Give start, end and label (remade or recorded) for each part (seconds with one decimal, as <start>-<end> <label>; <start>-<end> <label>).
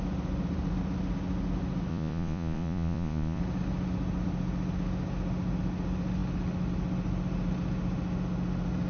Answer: 0.0-1.9 recorded; 1.9-3.4 remade; 3.4-8.9 recorded